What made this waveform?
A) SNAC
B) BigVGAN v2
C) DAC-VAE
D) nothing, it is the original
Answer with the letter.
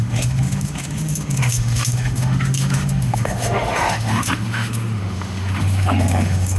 C